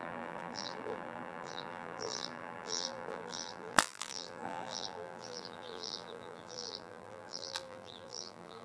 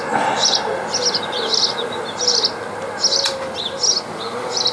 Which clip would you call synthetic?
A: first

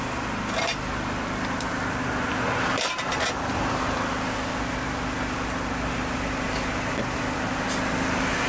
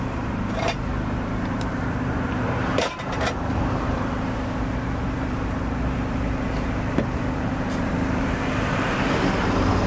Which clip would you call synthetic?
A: second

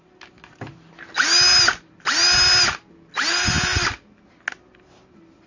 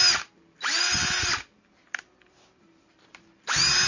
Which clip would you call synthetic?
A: second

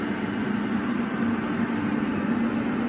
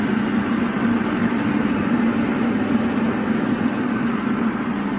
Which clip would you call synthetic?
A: second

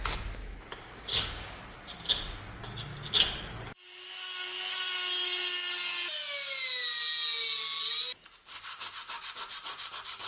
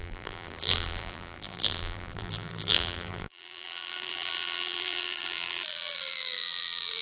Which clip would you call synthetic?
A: second